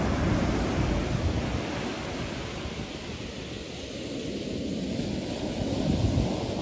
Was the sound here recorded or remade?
recorded